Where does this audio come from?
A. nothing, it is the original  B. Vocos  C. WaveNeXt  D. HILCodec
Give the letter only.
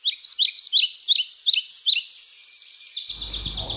A